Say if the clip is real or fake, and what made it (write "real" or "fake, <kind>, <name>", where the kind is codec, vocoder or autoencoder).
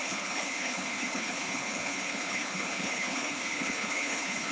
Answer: fake, codec, HILCodec